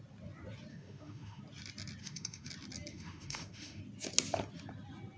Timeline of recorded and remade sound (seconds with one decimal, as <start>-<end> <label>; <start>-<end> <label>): 0.0-0.7 recorded; 0.7-1.4 remade; 1.4-2.0 recorded; 2.0-2.5 remade; 2.5-2.9 recorded; 2.9-3.8 remade; 3.8-5.2 recorded